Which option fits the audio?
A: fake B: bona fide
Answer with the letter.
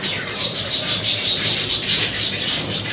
A